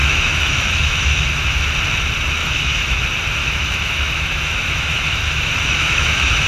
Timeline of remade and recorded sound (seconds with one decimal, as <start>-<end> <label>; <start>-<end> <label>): 0.0-1.6 remade; 1.6-2.4 recorded; 2.4-3.0 remade; 3.0-3.4 recorded; 3.4-6.5 remade